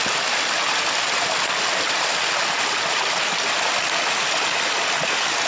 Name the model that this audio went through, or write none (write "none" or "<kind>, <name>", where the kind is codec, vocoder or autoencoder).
none